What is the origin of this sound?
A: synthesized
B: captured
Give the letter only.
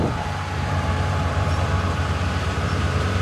A